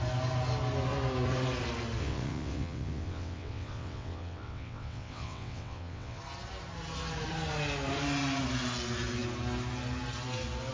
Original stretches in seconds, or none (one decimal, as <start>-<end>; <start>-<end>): 0.0-2.0; 6.2-10.7